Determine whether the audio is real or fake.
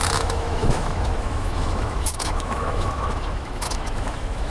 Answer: fake